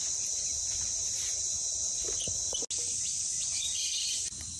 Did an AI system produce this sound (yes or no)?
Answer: no